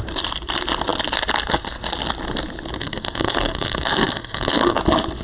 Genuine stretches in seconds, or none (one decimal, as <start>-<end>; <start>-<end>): 0.0-2.8; 4.8-5.2

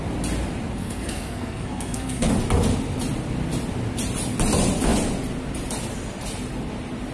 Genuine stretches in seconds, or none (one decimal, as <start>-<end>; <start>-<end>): 0.0-0.8; 2.3-7.1

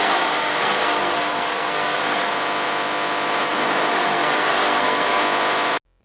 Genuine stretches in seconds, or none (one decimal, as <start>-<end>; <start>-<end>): 2.3-3.9; 5.2-6.0

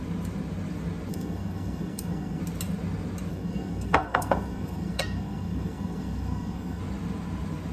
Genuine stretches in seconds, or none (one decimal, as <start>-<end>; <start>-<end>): 0.0-1.1; 2.4-3.3; 6.8-7.7